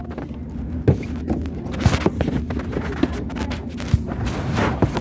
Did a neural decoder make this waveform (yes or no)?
no